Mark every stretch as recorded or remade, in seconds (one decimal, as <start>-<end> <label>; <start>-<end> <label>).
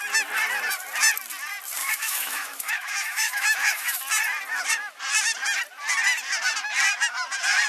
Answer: 0.0-1.8 recorded; 1.8-4.0 remade; 4.0-7.7 recorded